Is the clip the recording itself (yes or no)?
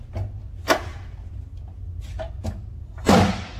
yes